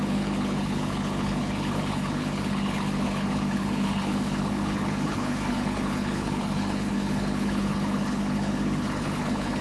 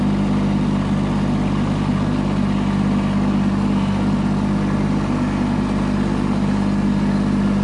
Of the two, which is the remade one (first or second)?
first